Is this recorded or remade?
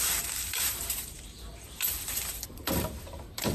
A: remade